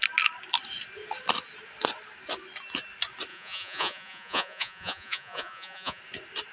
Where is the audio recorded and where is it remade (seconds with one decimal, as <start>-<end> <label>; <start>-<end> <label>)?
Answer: 0.0-3.3 recorded; 3.3-6.0 remade; 6.0-6.5 recorded